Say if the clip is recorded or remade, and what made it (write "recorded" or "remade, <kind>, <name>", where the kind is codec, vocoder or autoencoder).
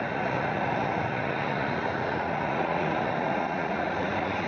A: remade, vocoder, Vocos